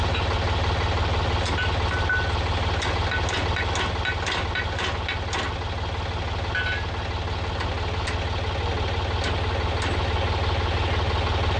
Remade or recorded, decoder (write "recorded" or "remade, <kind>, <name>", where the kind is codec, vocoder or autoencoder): recorded